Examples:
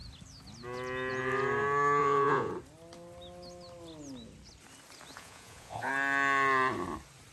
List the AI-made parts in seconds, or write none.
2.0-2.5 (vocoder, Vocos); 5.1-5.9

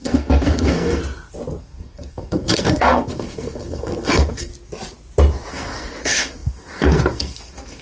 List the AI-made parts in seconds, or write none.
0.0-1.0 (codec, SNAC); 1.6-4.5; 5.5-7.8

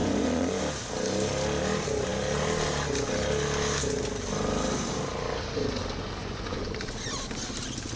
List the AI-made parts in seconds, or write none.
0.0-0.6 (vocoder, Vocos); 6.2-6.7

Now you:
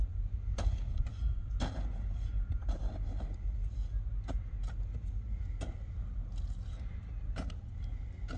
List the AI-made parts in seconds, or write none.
0.9-1.6 (vocoder, Vocos)

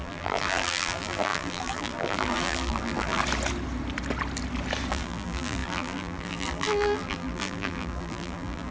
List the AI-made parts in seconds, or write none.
0.0-3.2 (vocoder, BigVGAN v2); 4.9-8.7